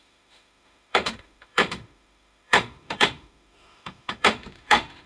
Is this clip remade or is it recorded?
remade